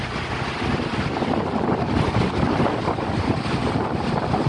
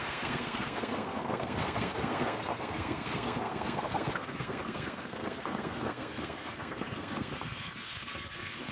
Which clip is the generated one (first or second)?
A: second